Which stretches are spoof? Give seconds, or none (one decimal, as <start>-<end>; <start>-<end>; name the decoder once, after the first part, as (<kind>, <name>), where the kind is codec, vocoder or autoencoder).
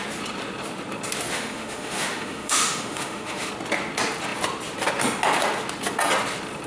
1.3-3.5 (autoencoder, DAC-VAE)